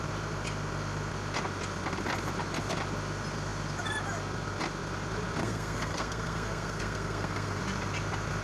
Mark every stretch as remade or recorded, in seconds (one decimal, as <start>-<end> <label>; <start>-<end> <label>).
0.0-5.4 recorded; 5.4-7.6 remade; 7.6-8.4 recorded